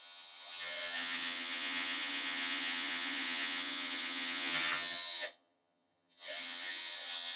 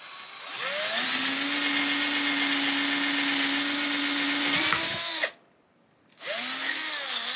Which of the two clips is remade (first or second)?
first